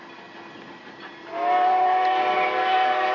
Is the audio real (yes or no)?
yes